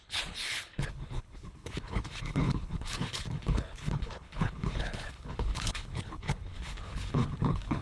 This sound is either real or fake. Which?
fake